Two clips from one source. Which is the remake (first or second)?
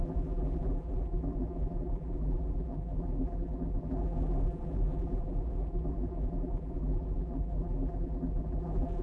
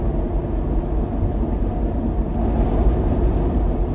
first